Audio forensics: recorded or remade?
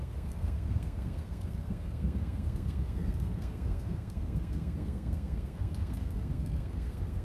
remade